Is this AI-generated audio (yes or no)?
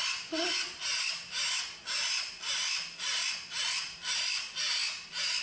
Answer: no